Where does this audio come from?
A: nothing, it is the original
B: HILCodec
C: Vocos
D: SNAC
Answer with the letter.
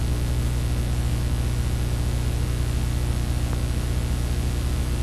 A